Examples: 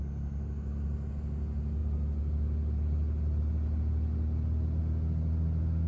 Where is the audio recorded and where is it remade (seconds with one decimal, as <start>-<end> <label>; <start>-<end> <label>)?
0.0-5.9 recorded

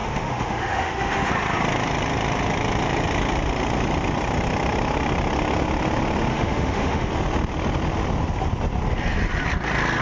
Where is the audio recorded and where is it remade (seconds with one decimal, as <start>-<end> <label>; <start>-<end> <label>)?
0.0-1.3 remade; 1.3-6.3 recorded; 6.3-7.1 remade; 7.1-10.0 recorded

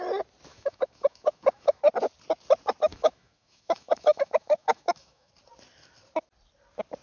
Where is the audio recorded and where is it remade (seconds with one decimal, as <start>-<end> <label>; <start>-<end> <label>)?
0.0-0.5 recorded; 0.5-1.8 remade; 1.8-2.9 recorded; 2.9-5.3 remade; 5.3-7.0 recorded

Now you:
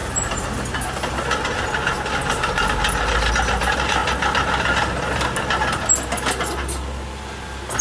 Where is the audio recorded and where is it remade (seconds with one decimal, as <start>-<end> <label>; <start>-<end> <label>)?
0.0-7.8 recorded

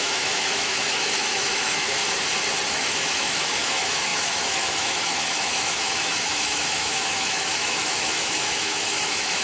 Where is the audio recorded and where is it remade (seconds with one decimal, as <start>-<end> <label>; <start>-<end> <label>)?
0.0-2.0 remade; 2.0-2.7 recorded; 2.7-9.4 remade